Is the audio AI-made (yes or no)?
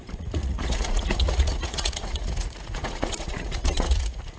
yes